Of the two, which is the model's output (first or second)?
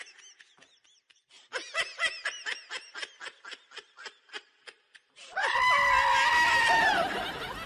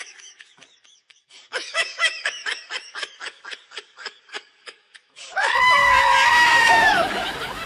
second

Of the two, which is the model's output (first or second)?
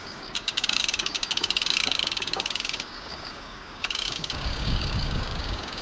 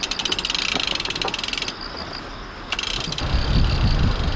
first